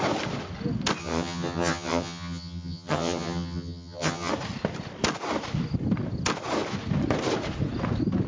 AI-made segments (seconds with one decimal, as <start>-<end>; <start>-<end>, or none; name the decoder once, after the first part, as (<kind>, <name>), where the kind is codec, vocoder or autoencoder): 1.0-4.3 (vocoder, HiFi-GAN)